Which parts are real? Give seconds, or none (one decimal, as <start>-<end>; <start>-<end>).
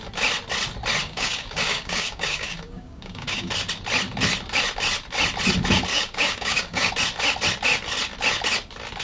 0.0-1.0; 3.5-5.9; 6.9-9.0